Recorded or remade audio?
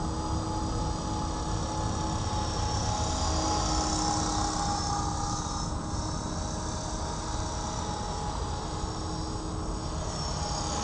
recorded